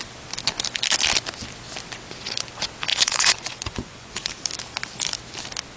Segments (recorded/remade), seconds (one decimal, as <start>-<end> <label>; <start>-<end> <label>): 0.0-2.9 recorded; 2.9-4.3 remade; 4.3-5.8 recorded